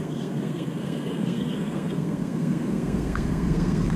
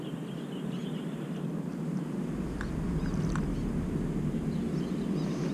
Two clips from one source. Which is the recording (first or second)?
second